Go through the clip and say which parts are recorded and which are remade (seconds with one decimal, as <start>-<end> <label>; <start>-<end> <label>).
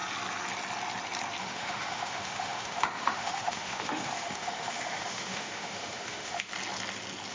0.0-1.4 recorded; 1.4-6.5 remade; 6.5-7.3 recorded